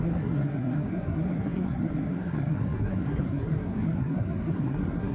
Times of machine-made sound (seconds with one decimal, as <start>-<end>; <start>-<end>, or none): 0.0-5.1